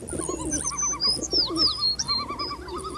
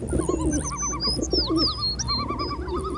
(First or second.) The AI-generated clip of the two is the first